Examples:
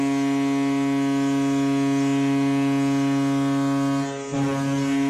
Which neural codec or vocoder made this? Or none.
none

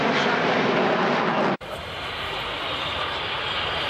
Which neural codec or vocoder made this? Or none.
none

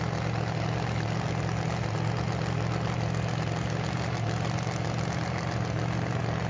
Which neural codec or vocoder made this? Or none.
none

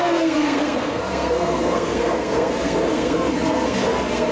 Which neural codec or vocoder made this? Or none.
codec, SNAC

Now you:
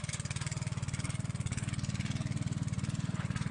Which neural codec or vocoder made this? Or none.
none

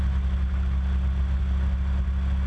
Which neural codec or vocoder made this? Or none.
none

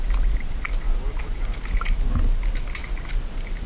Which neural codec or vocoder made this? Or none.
none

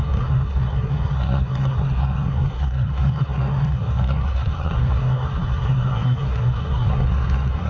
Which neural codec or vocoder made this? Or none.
codec, SNAC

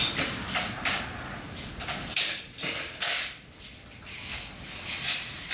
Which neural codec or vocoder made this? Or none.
none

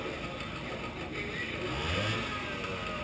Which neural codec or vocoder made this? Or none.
none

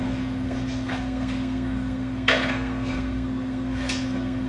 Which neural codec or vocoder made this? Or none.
codec, SNAC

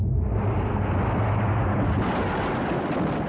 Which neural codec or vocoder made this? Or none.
none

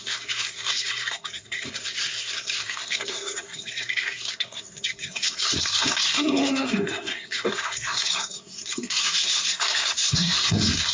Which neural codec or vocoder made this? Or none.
codec, SNAC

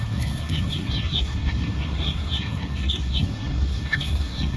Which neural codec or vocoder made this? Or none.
codec, SNAC